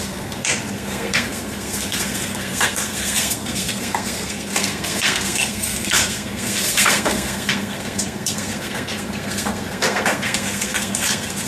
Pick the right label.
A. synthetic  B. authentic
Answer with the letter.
A